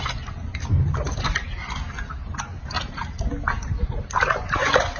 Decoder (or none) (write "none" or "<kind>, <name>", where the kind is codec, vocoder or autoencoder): none